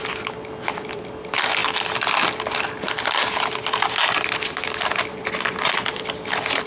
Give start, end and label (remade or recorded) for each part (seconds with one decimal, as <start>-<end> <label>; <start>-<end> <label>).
0.0-6.7 recorded